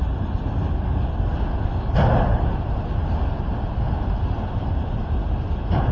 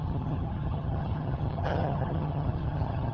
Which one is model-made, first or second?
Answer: second